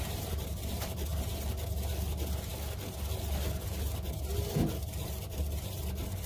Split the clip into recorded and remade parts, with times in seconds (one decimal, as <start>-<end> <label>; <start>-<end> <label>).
0.0-1.1 remade; 1.1-4.9 recorded; 4.9-6.3 remade